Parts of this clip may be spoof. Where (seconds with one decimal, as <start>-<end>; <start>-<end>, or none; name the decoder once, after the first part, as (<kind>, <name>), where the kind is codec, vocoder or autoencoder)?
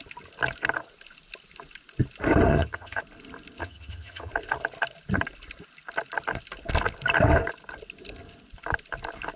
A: 2.5-3.0 (vocoder, HiFi-GAN); 3.6-4.3